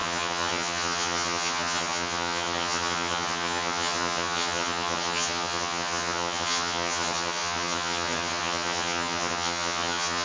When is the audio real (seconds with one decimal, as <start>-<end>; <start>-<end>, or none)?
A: none